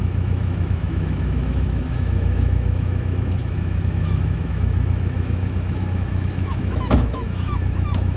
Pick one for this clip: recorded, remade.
remade